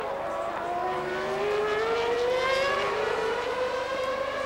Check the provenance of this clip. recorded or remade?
recorded